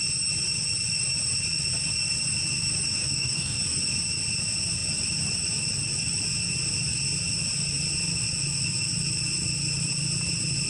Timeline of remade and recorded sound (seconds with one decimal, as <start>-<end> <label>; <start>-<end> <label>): 0.0-3.0 recorded; 3.0-3.6 remade; 3.6-10.7 recorded

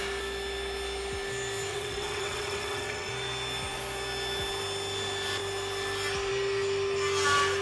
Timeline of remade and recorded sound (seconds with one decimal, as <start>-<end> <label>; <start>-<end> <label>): 0.0-1.7 recorded; 1.7-3.1 remade; 3.1-7.6 recorded

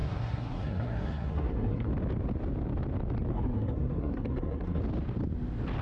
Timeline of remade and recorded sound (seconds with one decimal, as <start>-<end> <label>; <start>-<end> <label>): 0.0-1.9 remade; 1.9-3.3 recorded; 3.3-4.8 remade; 4.8-5.8 recorded

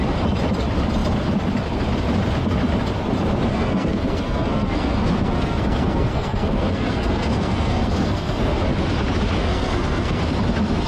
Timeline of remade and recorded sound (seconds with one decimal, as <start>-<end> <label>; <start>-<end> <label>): 0.0-3.5 recorded; 3.5-8.7 remade; 8.7-9.4 recorded; 9.4-10.2 remade; 10.2-10.9 recorded

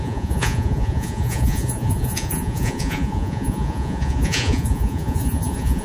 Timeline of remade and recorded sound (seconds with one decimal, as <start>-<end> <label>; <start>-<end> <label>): 0.0-5.8 remade

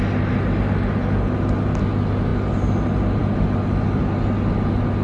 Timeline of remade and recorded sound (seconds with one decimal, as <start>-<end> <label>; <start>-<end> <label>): 0.0-5.0 recorded